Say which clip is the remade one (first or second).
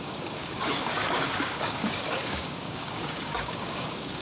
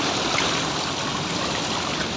first